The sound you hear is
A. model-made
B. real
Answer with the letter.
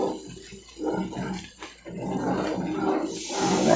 B